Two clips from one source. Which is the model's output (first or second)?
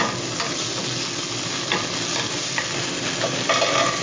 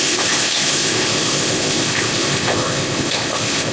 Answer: second